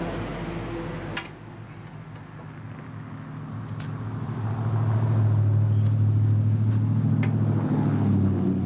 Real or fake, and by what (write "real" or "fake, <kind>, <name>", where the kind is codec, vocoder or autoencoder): real